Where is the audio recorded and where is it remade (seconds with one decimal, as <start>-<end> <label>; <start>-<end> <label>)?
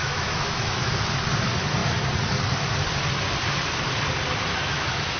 0.0-0.9 remade; 0.9-4.6 recorded; 4.6-5.2 remade